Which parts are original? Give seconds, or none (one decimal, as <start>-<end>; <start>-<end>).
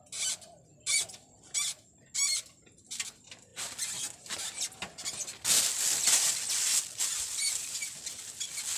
0.0-8.8